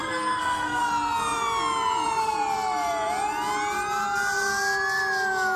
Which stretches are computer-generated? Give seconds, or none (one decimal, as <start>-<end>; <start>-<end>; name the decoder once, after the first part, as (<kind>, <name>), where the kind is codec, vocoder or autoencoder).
0.0-0.8 (codec, SNAC)